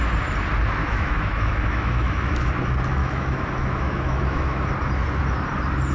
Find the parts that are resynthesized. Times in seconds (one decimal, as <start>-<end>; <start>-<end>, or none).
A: 0.8-2.5; 3.0-4.7